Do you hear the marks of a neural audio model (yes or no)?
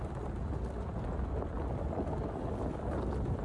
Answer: no